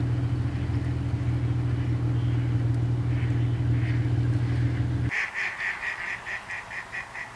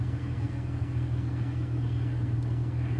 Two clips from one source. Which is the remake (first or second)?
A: second